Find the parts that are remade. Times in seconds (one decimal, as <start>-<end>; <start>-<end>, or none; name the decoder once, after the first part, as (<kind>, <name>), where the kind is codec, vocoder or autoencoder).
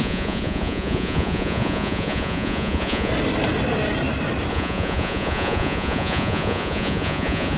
0.0-3.1 (vocoder, Vocos); 4.5-7.6